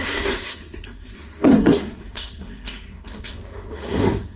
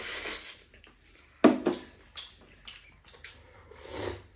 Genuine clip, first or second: second